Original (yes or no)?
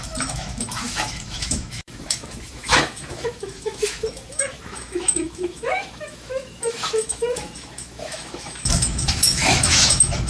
no